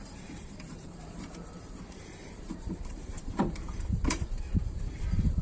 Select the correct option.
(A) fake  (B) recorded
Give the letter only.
A